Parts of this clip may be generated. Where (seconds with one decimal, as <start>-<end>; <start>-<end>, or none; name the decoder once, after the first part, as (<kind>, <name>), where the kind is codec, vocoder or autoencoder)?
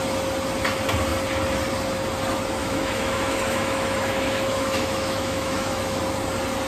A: 2.6-6.0 (autoencoder, DAC-VAE)